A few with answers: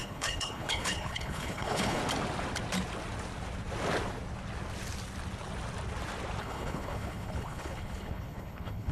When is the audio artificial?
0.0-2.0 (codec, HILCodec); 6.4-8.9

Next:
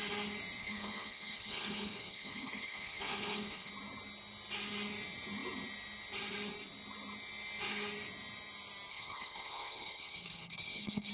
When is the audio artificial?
0.6-3.7 (codec, HILCodec); 8.9-11.1

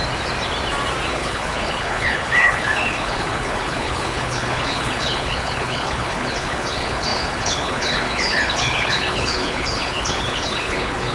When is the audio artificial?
1.1-11.1 (codec, HILCodec)

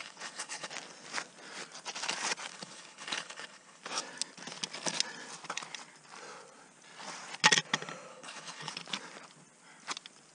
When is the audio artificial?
0.0-0.7 (codec, HILCodec); 2.5-3.8; 8.1-8.7

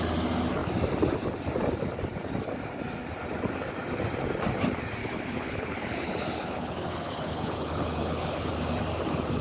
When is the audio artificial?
5.0-8.5 (codec, HILCodec)

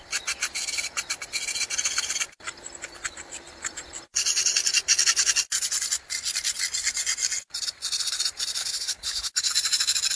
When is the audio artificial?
8.6-9.5 (codec, HILCodec)

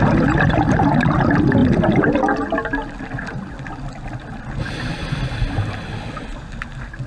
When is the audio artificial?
none

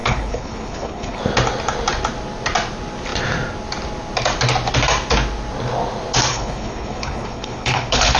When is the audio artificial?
0.0-1.2 (codec, HILCodec); 6.3-8.2